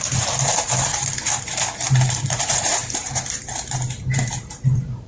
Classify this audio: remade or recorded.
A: remade